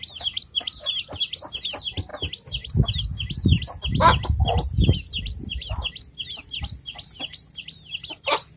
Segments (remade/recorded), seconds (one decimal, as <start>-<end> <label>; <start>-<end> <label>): 0.0-8.6 recorded

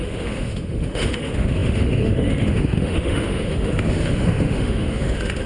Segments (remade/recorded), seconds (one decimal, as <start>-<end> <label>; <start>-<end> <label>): 0.0-5.5 remade